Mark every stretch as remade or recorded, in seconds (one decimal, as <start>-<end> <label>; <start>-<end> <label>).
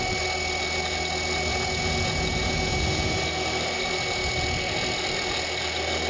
0.0-1.5 recorded; 1.5-3.2 remade; 3.2-6.1 recorded